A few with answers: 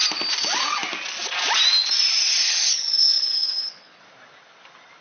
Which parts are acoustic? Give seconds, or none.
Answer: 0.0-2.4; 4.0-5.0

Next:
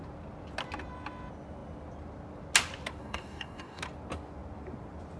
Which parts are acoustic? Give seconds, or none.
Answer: 0.0-3.0; 3.8-5.2

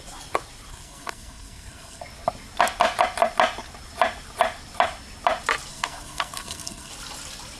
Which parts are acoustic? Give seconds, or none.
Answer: 0.0-0.7; 2.0-5.7; 6.9-7.6

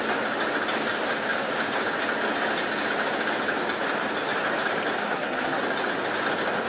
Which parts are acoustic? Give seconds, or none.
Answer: 0.0-5.0; 5.6-6.7

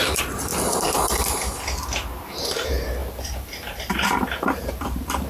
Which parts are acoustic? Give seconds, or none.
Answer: 0.5-2.3; 3.0-3.9